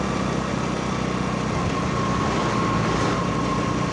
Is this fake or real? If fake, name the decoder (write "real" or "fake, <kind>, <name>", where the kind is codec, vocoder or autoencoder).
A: real